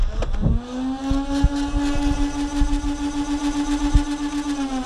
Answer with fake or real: real